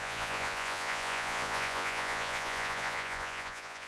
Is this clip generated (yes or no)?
yes